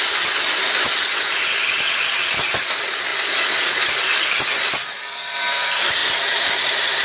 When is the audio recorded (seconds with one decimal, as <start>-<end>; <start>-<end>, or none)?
0.0-7.0